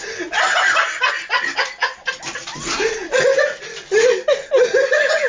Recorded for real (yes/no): yes